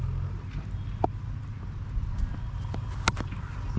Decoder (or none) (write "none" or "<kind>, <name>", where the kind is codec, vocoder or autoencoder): none